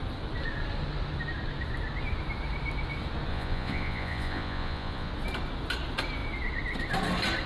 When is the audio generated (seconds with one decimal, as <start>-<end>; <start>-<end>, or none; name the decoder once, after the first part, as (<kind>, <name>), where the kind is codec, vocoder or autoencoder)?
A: 3.3-5.1 (vocoder, Vocos)